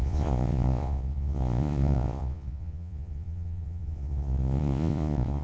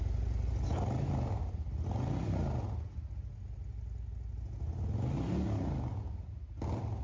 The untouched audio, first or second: second